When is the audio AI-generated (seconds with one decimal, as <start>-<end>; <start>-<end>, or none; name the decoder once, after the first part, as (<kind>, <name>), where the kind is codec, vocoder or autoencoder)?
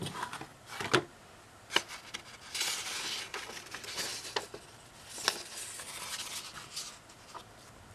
none